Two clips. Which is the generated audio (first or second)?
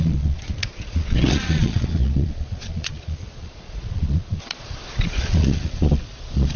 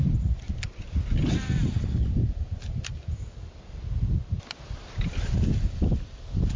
first